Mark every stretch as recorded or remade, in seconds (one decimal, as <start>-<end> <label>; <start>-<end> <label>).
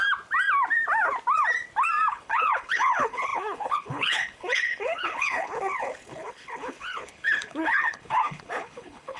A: 0.0-2.1 recorded; 2.1-9.2 remade